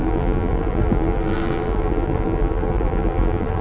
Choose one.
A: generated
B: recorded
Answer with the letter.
A